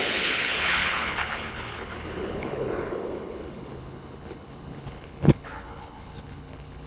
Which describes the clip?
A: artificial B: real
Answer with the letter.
A